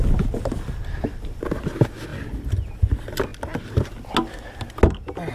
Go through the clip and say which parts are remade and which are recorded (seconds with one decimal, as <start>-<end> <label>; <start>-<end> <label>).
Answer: 0.0-5.3 recorded